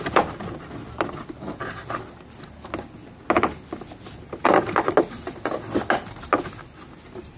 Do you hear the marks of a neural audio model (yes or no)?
no